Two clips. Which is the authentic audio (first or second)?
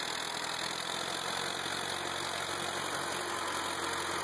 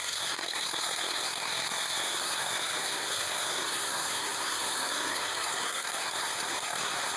first